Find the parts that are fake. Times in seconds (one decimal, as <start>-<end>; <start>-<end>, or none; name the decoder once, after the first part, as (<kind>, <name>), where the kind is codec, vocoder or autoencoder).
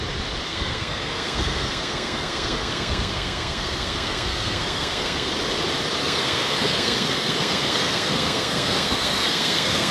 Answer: 0.5-5.3 (codec, SNAC); 6.0-9.9